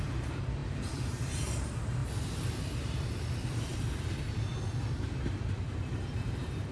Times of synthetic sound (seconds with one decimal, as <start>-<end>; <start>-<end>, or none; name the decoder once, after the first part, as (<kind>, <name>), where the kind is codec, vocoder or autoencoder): 0.0-2.0 (vocoder, BigVGAN v2); 2.5-4.5; 5.9-6.7